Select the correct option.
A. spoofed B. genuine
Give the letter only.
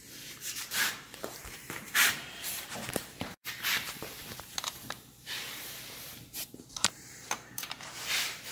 A